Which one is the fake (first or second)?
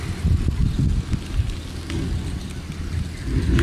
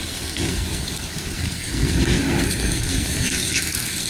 second